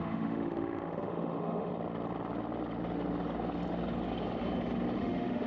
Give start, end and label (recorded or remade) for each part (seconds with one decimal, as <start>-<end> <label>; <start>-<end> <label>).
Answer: 0.0-1.7 remade; 1.7-5.0 recorded; 5.0-5.5 remade